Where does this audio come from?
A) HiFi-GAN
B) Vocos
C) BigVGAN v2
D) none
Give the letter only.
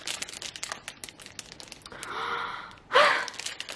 D